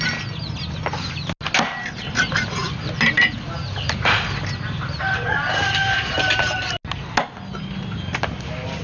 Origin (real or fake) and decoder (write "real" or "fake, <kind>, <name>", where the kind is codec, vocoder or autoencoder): real